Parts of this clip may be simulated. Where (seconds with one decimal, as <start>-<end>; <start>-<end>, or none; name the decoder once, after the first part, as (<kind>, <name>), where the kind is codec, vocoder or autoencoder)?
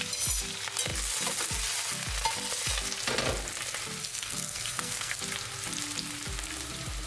4.0-5.2 (codec, SNAC)